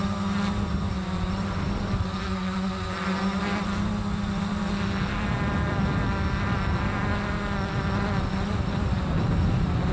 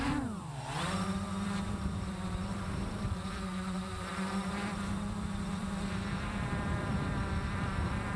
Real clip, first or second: first